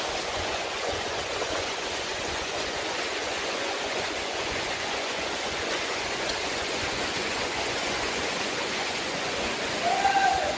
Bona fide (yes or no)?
no